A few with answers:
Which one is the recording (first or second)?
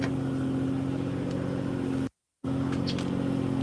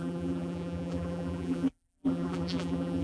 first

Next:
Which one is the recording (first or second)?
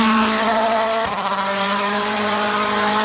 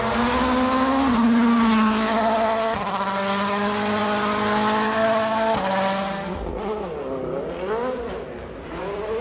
second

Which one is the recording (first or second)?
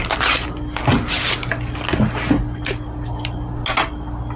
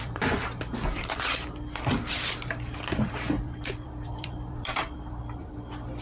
first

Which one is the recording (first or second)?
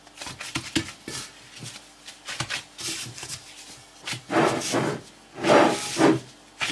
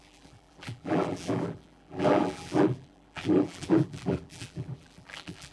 first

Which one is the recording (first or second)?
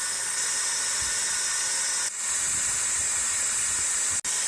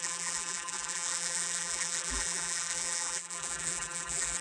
first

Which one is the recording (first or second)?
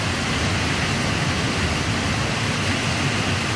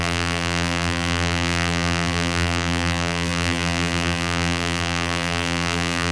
first